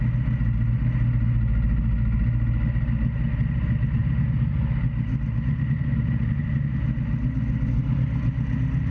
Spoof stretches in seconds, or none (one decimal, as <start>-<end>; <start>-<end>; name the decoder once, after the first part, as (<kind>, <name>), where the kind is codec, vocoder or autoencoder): none